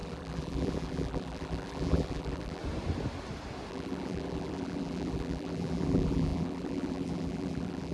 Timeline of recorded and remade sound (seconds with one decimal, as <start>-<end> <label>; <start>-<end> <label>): 0.0-2.6 remade; 2.6-3.7 recorded; 3.7-7.9 remade